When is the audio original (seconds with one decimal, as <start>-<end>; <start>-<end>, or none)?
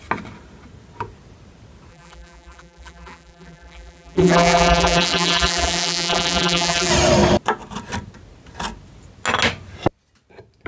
0.0-1.9; 6.9-10.7